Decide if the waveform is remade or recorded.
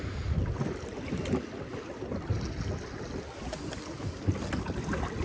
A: recorded